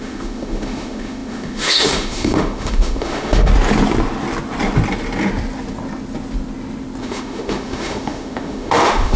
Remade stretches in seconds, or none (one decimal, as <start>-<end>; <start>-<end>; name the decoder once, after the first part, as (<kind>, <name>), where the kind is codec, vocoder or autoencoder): 0.0-3.5 (autoencoder, DAC-VAE); 7.0-9.2